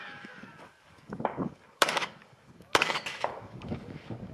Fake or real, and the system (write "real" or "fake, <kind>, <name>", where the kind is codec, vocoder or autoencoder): fake, codec, DAC